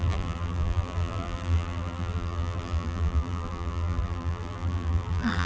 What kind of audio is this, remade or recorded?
remade